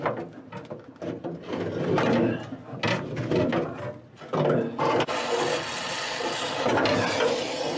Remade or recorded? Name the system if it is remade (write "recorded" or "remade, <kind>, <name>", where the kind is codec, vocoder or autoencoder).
recorded